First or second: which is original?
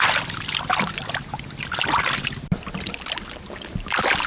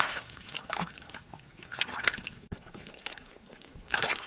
first